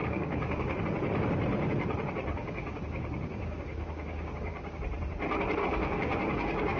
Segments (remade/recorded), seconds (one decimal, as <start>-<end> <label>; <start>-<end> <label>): 0.0-0.8 remade; 0.8-2.4 recorded; 2.4-4.8 remade; 4.8-5.6 recorded; 5.6-6.8 remade